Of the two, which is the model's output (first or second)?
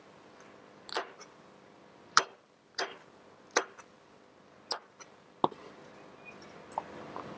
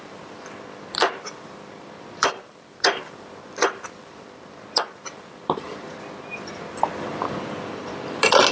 second